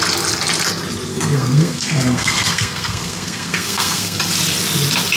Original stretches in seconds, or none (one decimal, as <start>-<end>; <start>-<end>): 0.0-1.1; 4.2-5.2